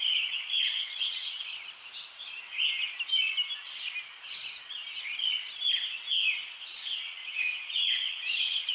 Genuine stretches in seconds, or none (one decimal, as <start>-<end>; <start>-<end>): 1.5-6.6